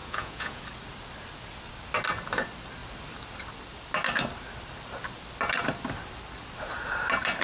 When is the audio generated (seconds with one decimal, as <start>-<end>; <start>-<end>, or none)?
0.0-0.6